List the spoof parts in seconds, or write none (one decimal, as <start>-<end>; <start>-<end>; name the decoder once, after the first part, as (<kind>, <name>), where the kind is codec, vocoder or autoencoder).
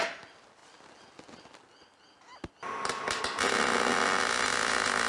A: none